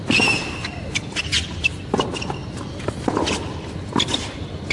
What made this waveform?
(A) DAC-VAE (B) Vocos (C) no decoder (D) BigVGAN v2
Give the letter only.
C